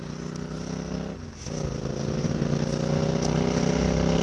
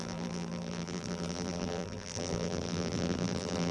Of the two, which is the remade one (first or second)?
second